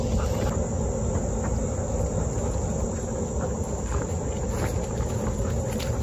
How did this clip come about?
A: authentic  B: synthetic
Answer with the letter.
A